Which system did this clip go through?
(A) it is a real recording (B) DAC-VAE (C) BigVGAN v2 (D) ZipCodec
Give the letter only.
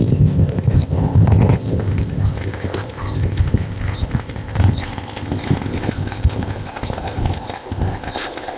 D